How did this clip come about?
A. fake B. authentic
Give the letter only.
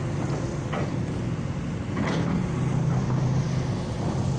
B